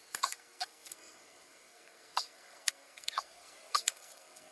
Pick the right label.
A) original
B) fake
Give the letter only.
B